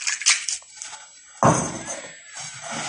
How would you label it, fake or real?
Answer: real